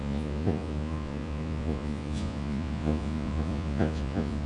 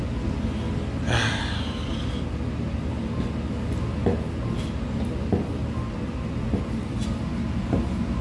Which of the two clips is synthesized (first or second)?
first